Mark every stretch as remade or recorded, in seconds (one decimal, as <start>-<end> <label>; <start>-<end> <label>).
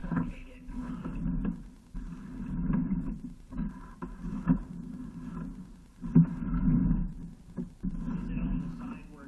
0.0-0.9 remade; 0.9-9.3 recorded